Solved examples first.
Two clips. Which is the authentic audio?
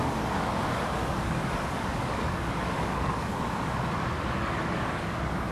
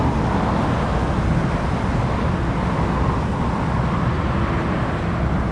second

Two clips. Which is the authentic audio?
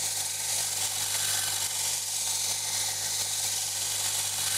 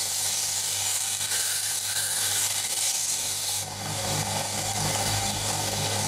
first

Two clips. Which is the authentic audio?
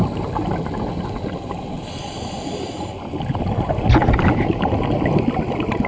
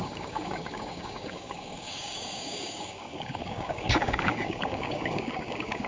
first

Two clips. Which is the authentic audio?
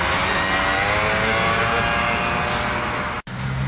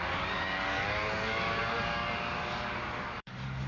first